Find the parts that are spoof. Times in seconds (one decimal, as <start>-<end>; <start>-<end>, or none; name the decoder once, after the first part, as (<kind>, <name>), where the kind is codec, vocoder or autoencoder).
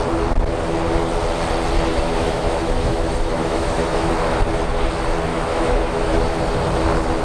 1.9-4.1 (autoencoder, DAC-VAE); 5.3-6.4